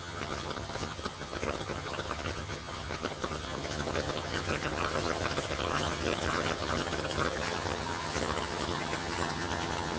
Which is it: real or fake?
fake